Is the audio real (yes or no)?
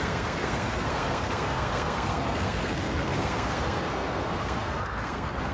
no